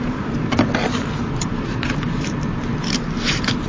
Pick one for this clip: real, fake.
fake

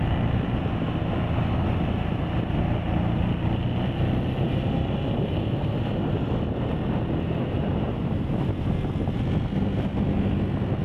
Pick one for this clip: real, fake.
real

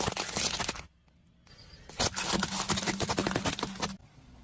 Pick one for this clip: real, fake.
real